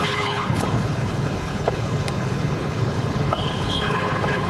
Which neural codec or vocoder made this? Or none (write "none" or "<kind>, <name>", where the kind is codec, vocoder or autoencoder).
codec, HILCodec